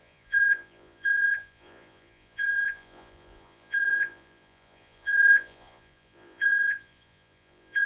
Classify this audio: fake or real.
fake